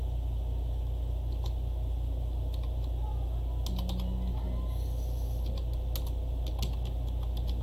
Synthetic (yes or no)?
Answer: no